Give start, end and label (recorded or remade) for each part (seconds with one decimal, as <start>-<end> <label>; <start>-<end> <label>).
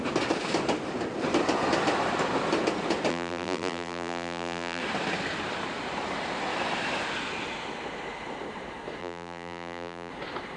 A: 0.0-3.1 recorded; 3.1-4.8 remade; 4.8-9.0 recorded; 9.0-10.1 remade; 10.1-10.6 recorded